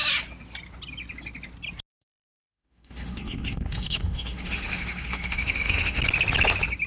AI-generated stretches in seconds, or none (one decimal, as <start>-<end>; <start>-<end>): 1.9-6.0

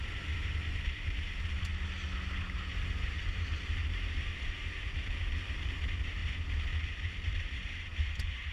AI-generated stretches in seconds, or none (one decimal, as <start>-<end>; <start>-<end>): 0.0-1.7; 3.1-6.2; 6.8-8.5